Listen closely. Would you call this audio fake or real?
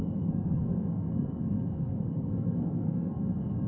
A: fake